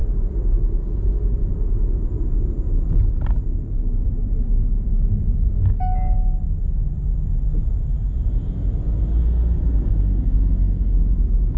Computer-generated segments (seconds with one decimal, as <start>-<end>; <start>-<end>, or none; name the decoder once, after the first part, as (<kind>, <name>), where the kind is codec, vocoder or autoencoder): 9.2-11.0 (codec, SNAC)